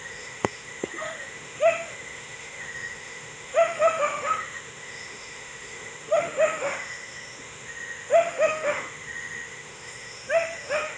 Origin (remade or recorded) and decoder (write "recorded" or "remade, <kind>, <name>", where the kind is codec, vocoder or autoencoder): remade, autoencoder, DAC-VAE